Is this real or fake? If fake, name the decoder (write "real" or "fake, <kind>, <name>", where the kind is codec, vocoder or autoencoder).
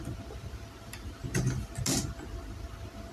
real